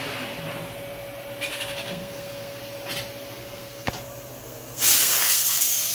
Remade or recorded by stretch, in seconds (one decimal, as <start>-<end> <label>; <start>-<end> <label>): 0.0-1.5 recorded; 1.5-2.6 remade; 2.6-3.4 recorded; 3.4-3.9 remade; 3.9-4.4 recorded; 4.4-5.9 remade

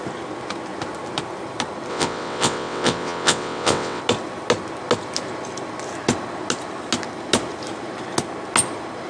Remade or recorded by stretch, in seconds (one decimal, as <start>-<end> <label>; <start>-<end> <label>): 0.0-1.9 recorded; 1.9-4.0 remade; 4.0-9.1 recorded

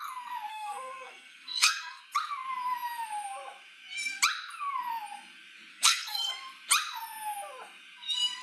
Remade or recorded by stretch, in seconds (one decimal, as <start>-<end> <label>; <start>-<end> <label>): 0.0-0.5 recorded; 0.5-2.0 remade; 2.0-5.7 recorded; 5.7-6.3 remade; 6.3-8.4 recorded

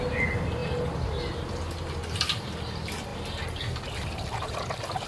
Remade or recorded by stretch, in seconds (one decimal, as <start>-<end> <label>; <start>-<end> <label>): 0.0-5.1 recorded